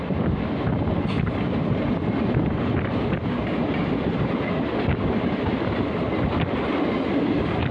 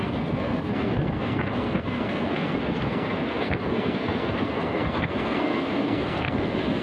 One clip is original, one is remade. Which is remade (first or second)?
second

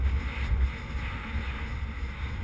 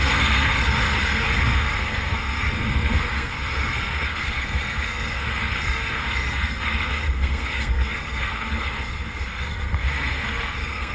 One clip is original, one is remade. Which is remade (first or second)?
second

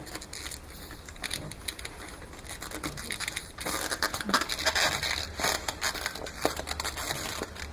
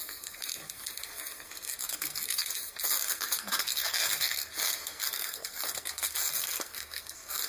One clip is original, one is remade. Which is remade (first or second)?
second